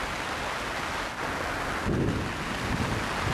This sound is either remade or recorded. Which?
recorded